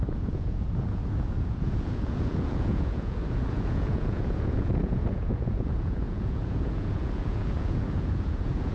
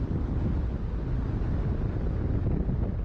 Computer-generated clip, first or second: first